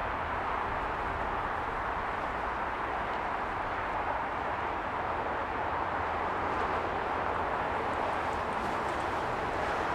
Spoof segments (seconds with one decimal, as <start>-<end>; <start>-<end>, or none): 0.0-0.5; 5.4-6.1